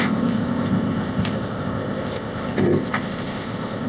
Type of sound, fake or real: fake